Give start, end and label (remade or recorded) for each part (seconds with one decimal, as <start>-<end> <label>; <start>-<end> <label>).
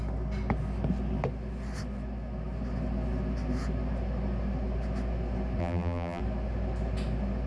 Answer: 0.0-5.6 recorded; 5.6-6.2 remade; 6.2-7.5 recorded